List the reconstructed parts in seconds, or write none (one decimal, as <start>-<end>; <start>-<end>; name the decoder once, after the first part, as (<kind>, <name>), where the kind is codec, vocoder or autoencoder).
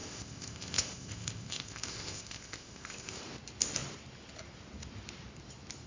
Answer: 0.0-3.2 (codec, ZipCodec)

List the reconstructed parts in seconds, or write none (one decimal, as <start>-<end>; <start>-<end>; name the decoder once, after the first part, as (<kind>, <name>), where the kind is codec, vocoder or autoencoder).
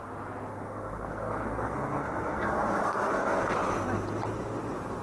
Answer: 0.5-3.5 (codec, SNAC)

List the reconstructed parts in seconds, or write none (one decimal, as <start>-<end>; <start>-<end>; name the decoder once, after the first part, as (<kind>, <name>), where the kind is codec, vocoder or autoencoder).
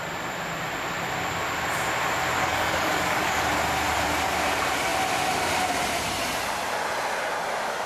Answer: 2.4-3.5 (codec, DAC)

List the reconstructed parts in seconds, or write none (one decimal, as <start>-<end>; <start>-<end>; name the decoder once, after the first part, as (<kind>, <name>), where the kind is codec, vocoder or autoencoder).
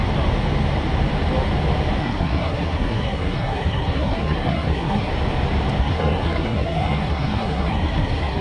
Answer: 2.0-5.1 (codec, SNAC); 5.8-8.4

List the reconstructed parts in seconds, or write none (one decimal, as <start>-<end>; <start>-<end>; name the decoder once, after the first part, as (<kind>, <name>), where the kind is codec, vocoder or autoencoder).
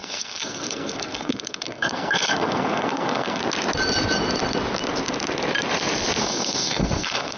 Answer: 0.0-3.4 (codec, SNAC); 6.2-7.4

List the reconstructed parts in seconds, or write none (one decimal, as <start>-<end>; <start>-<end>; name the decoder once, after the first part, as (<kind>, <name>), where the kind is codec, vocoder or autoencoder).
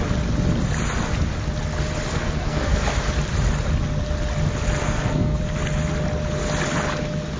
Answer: 2.1-2.8 (codec, SNAC); 4.8-5.4